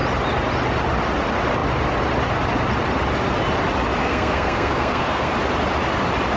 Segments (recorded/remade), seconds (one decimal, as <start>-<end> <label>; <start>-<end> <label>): 0.0-4.0 recorded; 4.0-5.3 remade; 5.3-6.4 recorded